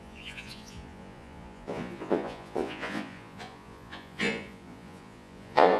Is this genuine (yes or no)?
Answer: no